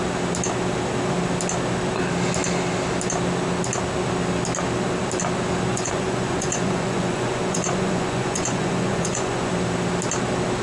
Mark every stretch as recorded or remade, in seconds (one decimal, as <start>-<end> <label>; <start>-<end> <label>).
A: 0.0-5.7 recorded; 5.7-9.5 remade; 9.5-10.6 recorded